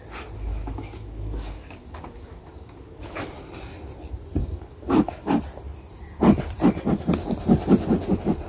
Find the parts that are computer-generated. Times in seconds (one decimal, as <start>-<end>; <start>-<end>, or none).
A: 0.5-3.3; 4.4-5.4